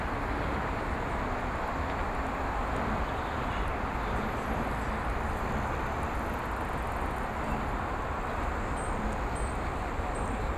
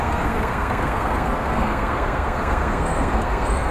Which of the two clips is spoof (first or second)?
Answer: second